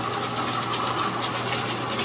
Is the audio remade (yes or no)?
no